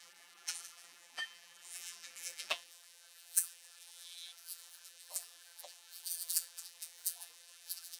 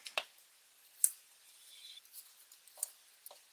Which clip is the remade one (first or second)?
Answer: first